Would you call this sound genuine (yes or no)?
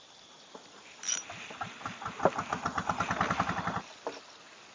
yes